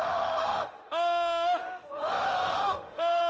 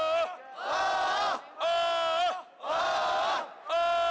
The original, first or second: second